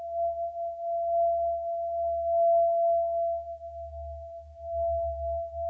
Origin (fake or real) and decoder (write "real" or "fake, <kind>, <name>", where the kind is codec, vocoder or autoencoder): real